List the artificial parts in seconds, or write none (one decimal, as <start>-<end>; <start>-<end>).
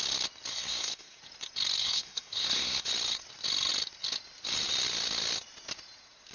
0.5-1.2; 1.8-2.9